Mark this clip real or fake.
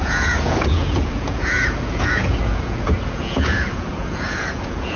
fake